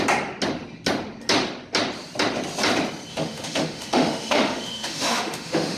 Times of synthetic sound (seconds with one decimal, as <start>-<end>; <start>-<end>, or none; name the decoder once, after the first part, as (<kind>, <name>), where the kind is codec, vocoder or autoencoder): 3.1-5.8 (autoencoder, DAC-VAE)